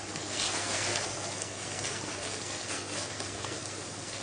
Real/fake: fake